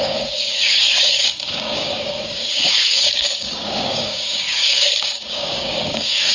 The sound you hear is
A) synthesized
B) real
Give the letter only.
A